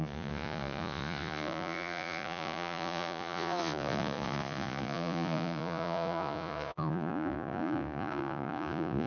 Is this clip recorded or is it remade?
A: remade